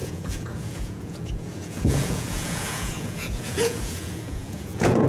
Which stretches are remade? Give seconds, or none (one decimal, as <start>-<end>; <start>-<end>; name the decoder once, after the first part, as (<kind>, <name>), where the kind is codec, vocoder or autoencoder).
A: 0.0-5.1 (vocoder, Vocos)

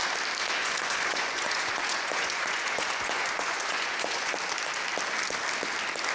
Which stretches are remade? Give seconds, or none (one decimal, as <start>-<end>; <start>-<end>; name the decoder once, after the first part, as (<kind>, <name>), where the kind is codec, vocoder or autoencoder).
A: 0.6-4.3 (vocoder, Vocos)